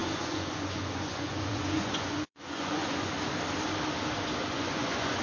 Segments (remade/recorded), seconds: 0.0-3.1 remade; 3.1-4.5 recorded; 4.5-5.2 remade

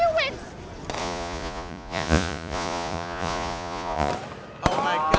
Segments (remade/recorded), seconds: 0.0-1.0 recorded; 1.0-4.1 remade; 4.1-5.2 recorded

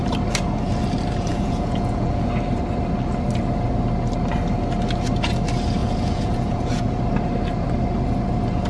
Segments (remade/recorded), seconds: 0.0-1.3 recorded; 1.3-2.3 remade; 2.3-5.8 recorded; 5.8-7.0 remade; 7.0-8.7 recorded

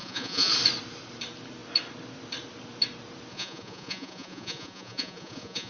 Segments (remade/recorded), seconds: 0.0-0.5 remade; 0.5-3.3 recorded; 3.3-5.7 remade

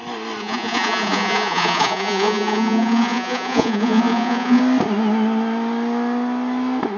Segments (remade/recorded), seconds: 0.0-0.4 recorded; 0.4-4.6 remade; 4.6-7.0 recorded

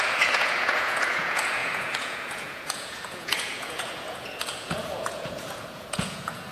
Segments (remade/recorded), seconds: 0.0-6.5 remade